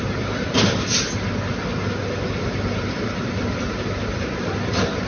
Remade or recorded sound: remade